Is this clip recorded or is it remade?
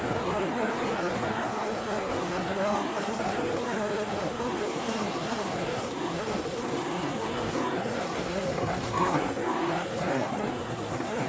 remade